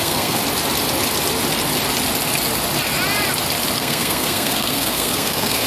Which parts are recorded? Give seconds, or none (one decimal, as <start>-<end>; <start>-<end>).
0.4-3.8